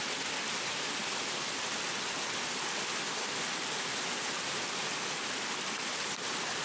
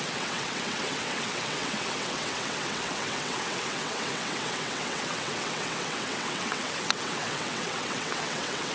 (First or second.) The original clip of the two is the first